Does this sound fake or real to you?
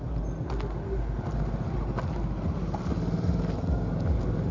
real